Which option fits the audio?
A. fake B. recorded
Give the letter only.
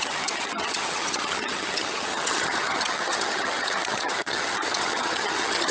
A